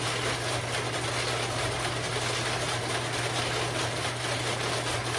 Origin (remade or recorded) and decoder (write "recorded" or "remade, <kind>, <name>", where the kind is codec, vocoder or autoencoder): recorded